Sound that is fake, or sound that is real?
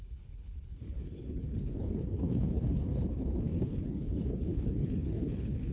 fake